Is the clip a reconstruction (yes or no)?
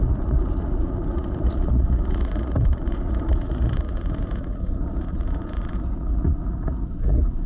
yes